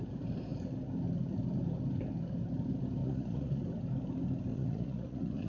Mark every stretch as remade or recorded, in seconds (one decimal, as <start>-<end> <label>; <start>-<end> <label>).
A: 0.0-3.0 recorded; 3.0-3.6 remade; 3.6-4.5 recorded; 4.5-5.5 remade